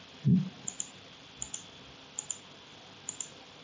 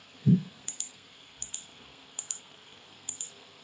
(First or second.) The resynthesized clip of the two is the second